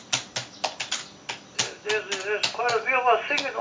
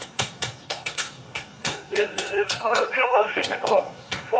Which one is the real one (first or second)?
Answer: first